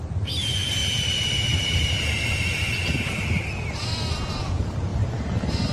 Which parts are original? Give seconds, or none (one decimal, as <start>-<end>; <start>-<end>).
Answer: 2.8-3.8; 4.9-5.7